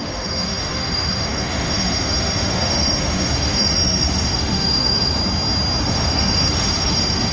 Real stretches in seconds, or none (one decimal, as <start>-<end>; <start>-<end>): 5.2-5.8

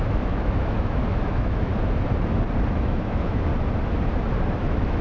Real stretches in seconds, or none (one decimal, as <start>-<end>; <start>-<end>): 1.7-2.7; 3.5-4.6

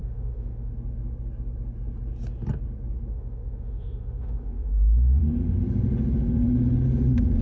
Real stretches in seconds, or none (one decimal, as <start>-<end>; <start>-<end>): 0.7-3.1; 5.2-7.4

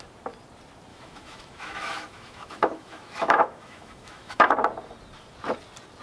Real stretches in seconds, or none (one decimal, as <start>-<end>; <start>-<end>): 0.0-0.9; 4.5-6.0